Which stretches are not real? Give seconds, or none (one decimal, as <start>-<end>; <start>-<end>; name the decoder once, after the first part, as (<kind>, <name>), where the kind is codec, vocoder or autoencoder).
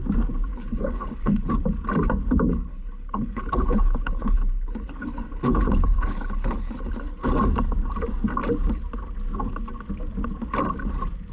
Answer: 0.5-1.5 (codec, HILCodec); 2.7-7.3